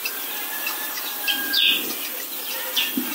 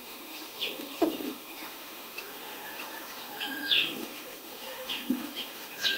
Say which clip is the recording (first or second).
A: first